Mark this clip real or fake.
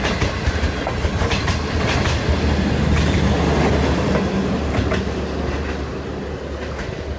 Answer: real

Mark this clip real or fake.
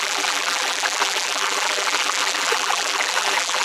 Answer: fake